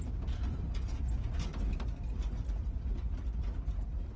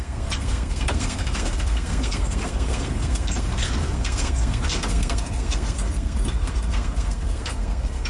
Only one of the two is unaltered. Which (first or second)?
first